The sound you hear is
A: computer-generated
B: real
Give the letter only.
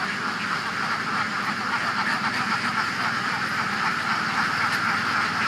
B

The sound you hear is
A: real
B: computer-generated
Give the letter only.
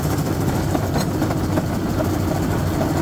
A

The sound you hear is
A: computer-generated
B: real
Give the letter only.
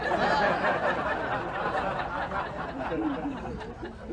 B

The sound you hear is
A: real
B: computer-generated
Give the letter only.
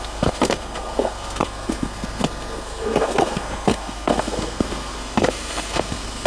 B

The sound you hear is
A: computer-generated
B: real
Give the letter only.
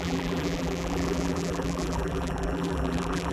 A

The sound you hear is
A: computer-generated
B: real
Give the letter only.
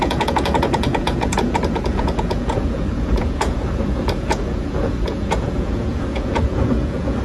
A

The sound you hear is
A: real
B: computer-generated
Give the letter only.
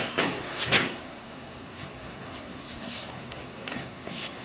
B